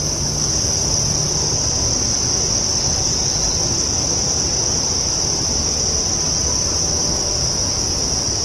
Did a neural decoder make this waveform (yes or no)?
no